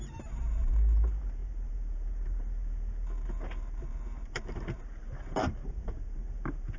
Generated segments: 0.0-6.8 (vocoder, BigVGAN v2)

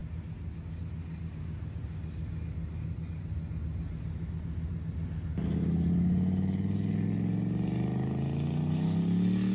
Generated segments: none

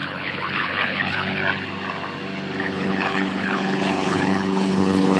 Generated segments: 0.0-1.4 (codec, HILCodec); 2.6-5.2

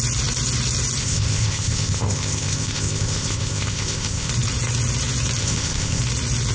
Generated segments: 1.0-4.3 (codec, ZipCodec); 5.4-6.0

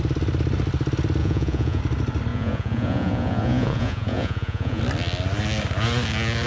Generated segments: 1.2-1.8 (vocoder, Vocos); 2.3-4.8

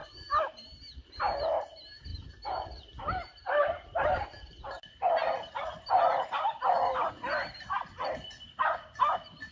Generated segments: 0.0-9.5 (vocoder, BigVGAN v2)

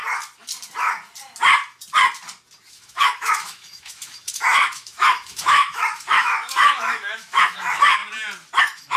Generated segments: 2.7-8.0 (autoencoder, DAC-VAE); 8.6-9.0